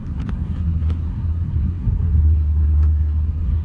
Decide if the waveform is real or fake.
fake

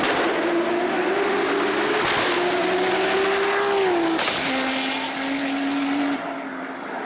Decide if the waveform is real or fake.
real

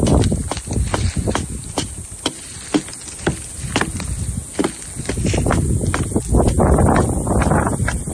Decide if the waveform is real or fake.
real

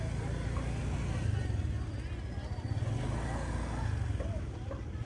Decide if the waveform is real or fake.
real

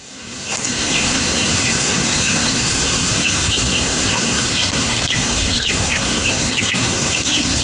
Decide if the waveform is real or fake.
fake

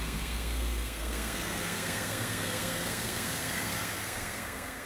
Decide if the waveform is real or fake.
fake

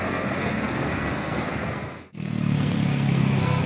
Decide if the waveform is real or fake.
fake